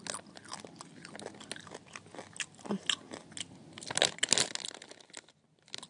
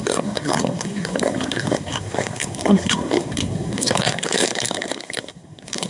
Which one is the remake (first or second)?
second